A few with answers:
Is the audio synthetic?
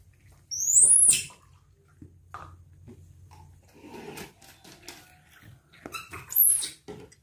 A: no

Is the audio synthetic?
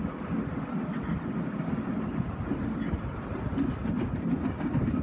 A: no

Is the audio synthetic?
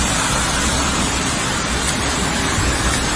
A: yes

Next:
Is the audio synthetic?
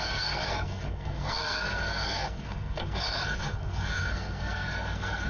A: yes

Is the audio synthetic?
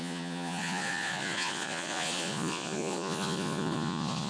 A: yes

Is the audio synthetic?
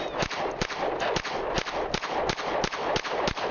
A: no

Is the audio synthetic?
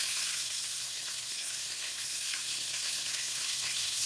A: yes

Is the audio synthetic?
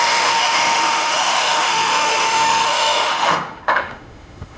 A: yes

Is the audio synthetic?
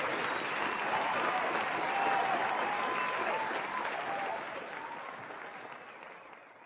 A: no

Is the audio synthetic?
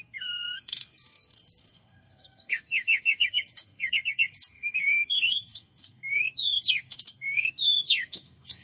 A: yes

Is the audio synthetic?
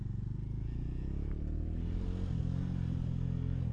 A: no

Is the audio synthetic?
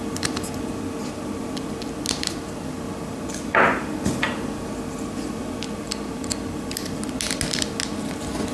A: no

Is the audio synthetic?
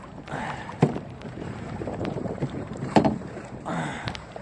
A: yes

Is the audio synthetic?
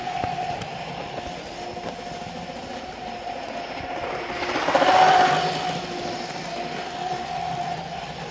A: no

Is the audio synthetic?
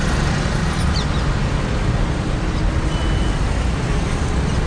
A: no